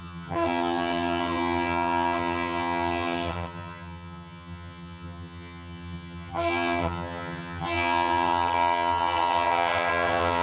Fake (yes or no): yes